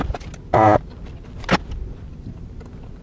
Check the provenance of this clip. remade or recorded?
recorded